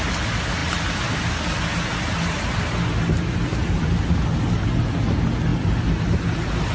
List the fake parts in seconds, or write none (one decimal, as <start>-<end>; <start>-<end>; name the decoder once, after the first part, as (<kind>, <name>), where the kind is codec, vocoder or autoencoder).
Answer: 3.5-4.1 (vocoder, BigVGAN v2)